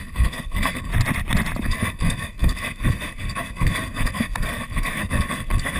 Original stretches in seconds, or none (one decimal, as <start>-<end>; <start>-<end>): 0.9-1.6